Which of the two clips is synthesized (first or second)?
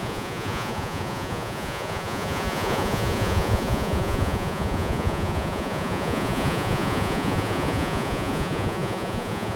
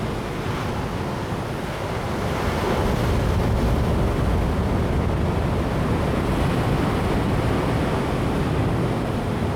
first